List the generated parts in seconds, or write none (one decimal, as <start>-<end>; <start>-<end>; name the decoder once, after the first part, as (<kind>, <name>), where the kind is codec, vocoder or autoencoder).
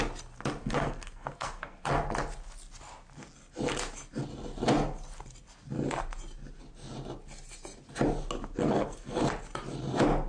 0.6-1.9 (codec, SNAC); 8.6-9.2